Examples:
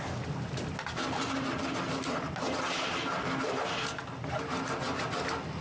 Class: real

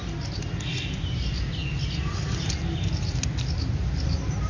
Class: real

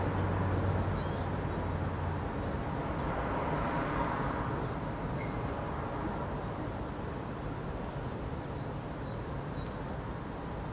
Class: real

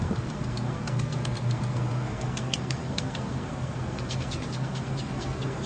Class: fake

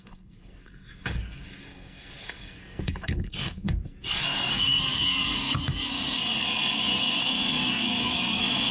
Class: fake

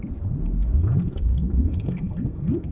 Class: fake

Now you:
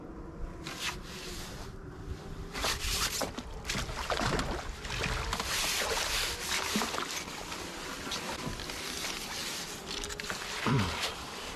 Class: real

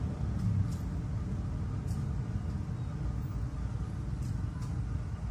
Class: real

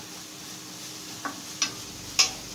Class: real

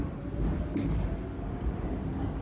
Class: real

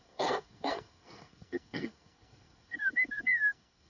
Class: fake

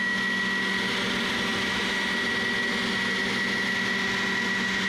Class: real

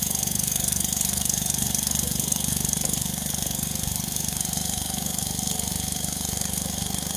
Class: fake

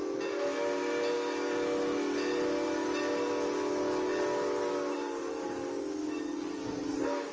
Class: real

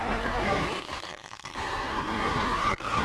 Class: fake